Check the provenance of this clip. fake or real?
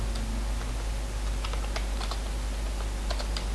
real